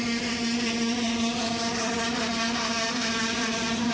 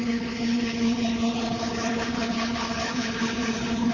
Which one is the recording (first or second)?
first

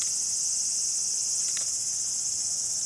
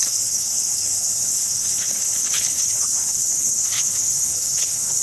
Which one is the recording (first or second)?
first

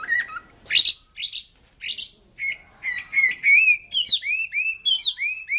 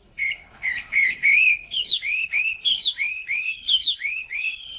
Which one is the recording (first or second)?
first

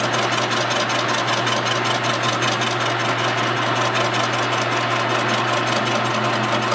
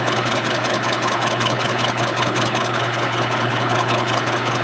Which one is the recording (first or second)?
first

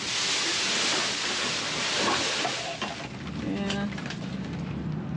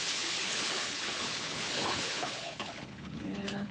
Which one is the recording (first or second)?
first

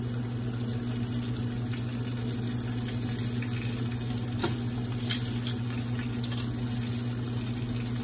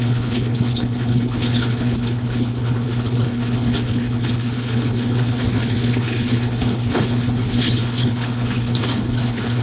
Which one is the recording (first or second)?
first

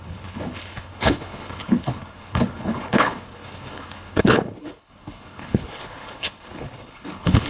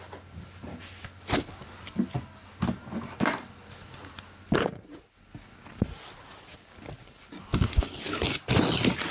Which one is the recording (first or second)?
second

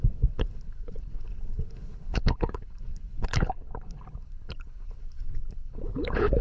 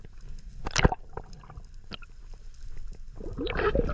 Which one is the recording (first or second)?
second